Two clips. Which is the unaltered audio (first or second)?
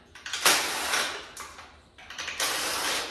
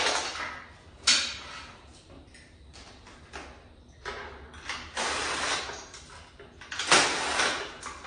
second